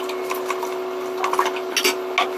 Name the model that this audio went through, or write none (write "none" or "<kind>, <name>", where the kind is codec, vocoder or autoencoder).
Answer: none